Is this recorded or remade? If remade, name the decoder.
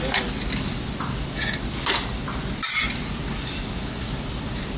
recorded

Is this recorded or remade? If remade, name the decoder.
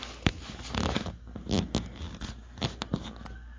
recorded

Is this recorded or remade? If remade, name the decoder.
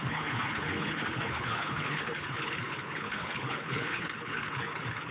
remade, codec, HILCodec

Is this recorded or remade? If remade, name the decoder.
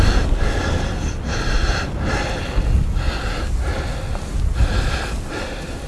recorded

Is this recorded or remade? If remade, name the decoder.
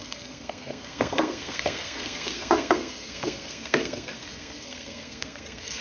remade, codec, SNAC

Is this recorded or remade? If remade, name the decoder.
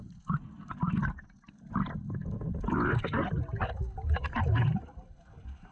recorded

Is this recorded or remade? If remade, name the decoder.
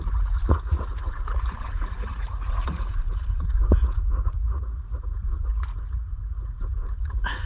remade, vocoder, Vocos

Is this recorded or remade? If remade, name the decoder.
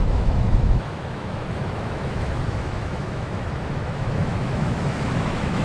remade, autoencoder, DAC-VAE